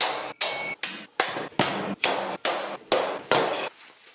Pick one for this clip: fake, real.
real